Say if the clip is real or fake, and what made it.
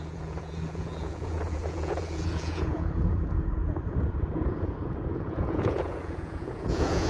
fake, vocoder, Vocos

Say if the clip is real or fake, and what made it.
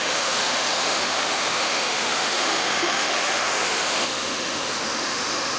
fake, autoencoder, DAC-VAE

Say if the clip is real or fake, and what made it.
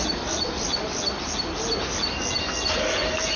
real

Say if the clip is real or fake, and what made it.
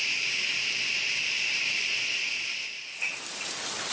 real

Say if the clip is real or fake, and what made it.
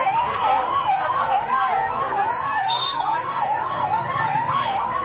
fake, codec, SNAC